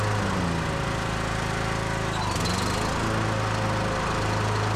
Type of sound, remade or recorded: recorded